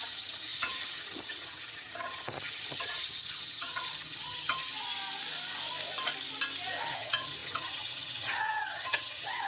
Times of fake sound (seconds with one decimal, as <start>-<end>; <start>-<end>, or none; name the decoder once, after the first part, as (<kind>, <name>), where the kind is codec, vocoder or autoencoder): 0.0-5.0 (vocoder, HiFi-GAN); 6.8-9.5